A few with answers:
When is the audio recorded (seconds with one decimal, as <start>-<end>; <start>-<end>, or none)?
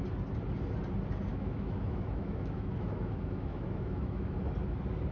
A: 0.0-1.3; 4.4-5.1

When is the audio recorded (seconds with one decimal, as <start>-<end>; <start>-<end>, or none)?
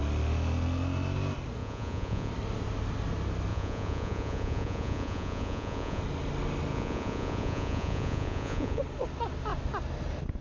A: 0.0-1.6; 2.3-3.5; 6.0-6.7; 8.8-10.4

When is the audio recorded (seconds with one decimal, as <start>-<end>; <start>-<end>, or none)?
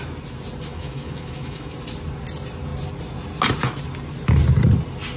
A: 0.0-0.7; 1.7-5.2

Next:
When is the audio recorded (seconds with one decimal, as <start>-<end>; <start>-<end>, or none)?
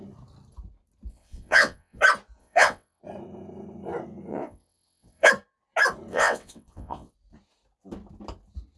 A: 0.0-1.1; 2.0-2.4; 3.0-4.3; 5.3-6.1; 7.1-8.8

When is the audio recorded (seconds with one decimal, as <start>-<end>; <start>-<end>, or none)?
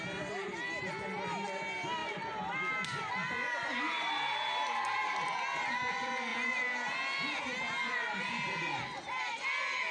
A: 0.0-6.3; 7.4-9.9